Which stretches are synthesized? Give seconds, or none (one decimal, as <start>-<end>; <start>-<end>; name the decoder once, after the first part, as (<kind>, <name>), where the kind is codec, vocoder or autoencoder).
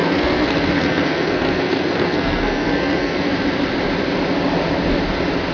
0.0-3.3 (codec, SNAC)